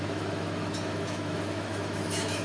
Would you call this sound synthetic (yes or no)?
yes